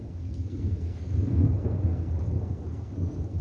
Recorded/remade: remade